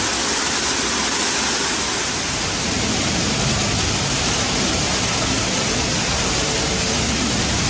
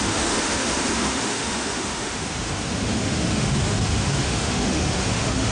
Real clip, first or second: first